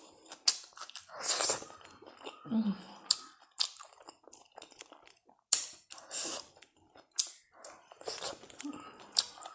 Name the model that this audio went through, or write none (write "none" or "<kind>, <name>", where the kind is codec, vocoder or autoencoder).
none